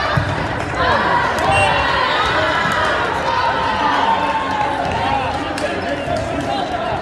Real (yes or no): yes